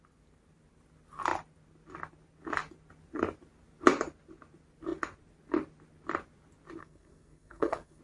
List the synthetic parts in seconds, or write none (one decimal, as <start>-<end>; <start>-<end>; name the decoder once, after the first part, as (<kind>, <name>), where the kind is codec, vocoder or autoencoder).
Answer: 6.8-8.0 (codec, SNAC)